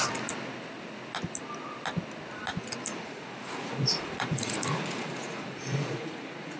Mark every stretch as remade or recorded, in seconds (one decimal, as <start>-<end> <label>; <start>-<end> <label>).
0.0-3.0 recorded; 3.0-6.6 remade